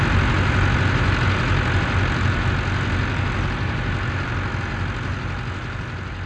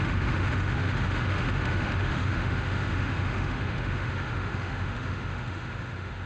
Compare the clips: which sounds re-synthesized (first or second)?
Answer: second